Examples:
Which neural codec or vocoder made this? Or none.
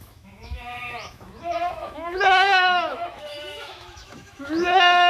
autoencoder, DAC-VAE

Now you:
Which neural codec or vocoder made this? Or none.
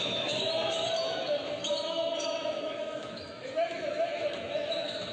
autoencoder, DAC-VAE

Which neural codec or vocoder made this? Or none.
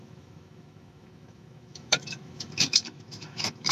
autoencoder, DAC-VAE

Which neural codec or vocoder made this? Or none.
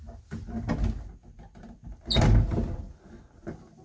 none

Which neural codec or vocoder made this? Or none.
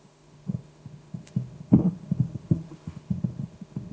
autoencoder, DAC-VAE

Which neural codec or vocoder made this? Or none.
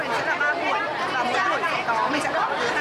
none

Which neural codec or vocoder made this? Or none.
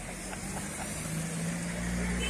none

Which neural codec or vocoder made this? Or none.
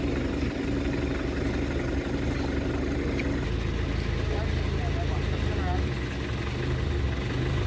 none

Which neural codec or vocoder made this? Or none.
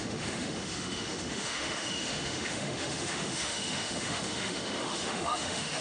autoencoder, DAC-VAE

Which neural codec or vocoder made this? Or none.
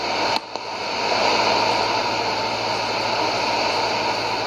none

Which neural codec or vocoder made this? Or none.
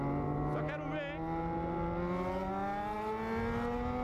none